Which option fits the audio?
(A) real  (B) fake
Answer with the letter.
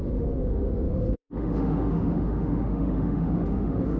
B